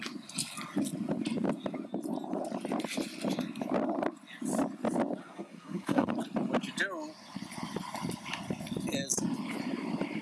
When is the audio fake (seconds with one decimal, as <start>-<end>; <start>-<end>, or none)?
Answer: 5.2-6.2